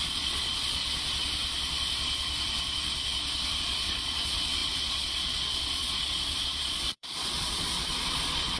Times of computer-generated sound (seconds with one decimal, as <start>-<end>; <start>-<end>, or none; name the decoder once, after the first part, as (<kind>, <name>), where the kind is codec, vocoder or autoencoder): 0.0-0.8 (vocoder, Vocos); 3.6-8.6